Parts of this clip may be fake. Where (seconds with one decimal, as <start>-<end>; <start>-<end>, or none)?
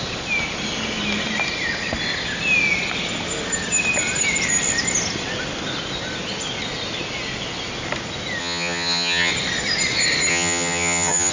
8.4-9.3; 10.3-11.3